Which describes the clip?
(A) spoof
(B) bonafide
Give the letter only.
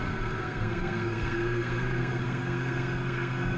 A